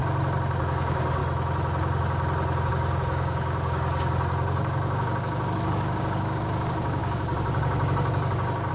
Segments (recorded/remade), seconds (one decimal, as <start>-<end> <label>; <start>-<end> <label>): 0.0-0.6 recorded; 0.6-1.2 remade; 1.2-2.7 recorded; 2.7-8.7 remade